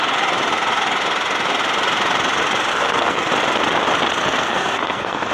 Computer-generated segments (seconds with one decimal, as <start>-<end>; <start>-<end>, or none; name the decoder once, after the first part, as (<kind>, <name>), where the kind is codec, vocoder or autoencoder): 2.7-3.3 (codec, SNAC); 4.2-5.3